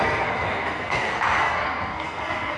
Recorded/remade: remade